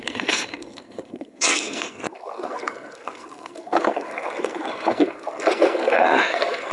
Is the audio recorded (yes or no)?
no